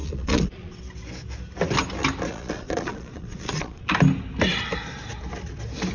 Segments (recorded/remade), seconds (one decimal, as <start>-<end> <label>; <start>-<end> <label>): 0.0-0.8 remade; 0.8-2.3 recorded; 2.3-3.9 remade; 3.9-5.9 recorded